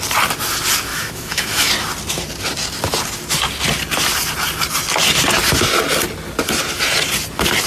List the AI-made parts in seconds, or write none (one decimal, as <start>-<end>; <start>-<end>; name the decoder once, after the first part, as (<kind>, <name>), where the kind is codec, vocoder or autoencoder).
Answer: 0.9-1.7 (autoencoder, DAC-VAE)